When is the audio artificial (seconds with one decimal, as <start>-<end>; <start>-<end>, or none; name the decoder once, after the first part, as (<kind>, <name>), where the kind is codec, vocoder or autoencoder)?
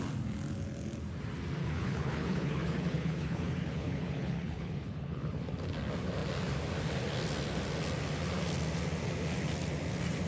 1.6-5.4 (codec, HILCodec)